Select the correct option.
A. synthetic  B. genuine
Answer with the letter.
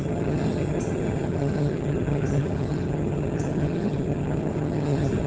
A